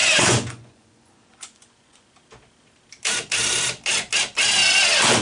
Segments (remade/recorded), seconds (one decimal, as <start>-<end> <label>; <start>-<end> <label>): 0.0-2.1 remade; 2.1-5.2 recorded